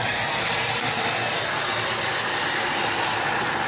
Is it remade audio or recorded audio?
recorded